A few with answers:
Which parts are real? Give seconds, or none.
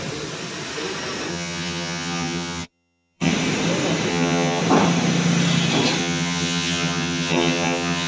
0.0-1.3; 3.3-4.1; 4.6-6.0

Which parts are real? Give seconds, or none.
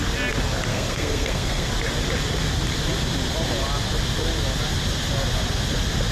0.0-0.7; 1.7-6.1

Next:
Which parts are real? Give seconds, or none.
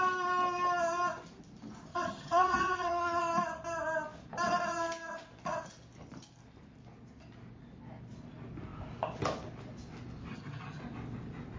0.0-1.9; 3.2-10.3; 10.8-11.6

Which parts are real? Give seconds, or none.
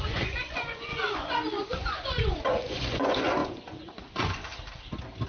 4.4-5.3